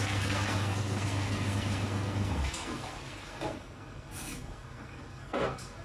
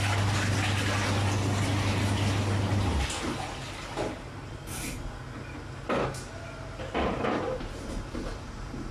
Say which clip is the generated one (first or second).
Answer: first